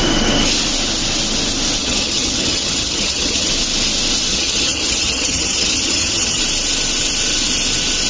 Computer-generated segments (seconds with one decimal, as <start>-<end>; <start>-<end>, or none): 1.8-3.5; 4.3-6.4